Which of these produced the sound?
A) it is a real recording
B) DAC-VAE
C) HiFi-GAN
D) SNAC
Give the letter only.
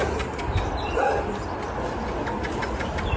A